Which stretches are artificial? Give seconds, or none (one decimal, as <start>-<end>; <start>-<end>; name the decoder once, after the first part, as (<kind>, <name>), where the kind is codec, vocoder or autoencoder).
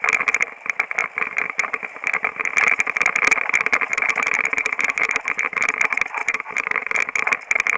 1.0-2.5 (vocoder, BigVGAN v2); 3.9-5.8; 6.2-7.2